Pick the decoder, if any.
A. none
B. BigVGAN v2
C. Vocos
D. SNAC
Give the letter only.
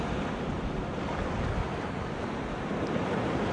A